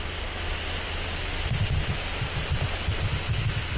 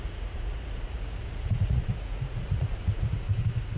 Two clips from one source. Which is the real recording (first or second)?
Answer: first